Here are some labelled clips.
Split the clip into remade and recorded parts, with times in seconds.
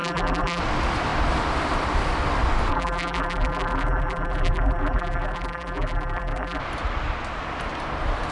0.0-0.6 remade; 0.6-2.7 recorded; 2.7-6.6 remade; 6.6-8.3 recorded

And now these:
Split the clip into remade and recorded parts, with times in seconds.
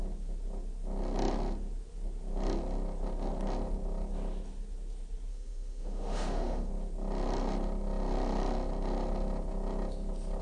0.0-5.3 recorded; 5.3-6.7 remade; 6.7-10.4 recorded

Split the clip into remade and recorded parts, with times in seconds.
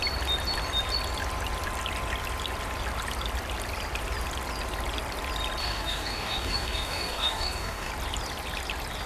0.0-5.6 recorded; 5.6-7.9 remade; 7.9-9.1 recorded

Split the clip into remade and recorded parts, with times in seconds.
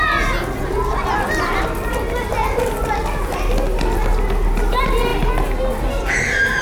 0.0-6.6 recorded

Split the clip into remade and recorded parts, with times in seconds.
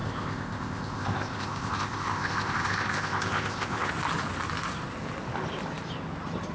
0.0-3.9 remade; 3.9-6.5 recorded